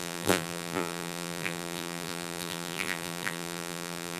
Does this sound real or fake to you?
fake